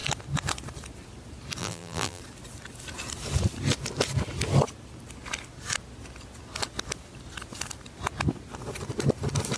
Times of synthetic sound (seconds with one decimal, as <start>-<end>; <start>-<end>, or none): 1.6-2.2